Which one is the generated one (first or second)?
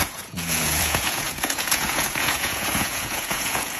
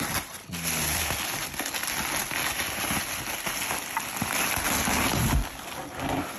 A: first